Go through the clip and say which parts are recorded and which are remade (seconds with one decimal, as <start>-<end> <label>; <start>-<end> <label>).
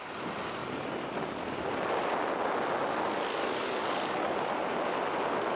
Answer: 0.0-3.4 recorded; 3.4-4.5 remade; 4.5-5.6 recorded